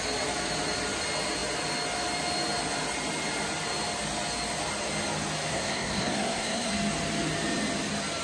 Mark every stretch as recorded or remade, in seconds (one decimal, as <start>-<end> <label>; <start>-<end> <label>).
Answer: 0.0-5.5 recorded; 5.5-6.7 remade; 6.7-8.2 recorded